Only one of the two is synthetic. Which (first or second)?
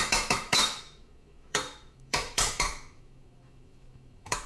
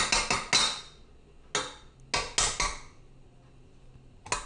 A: first